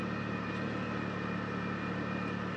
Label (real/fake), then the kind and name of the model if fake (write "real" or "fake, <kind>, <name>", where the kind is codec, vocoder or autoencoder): real